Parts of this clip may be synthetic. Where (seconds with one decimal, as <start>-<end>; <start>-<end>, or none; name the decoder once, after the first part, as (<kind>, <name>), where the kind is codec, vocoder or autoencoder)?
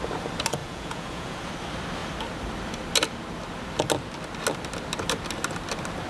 0.6-1.5 (vocoder, Vocos)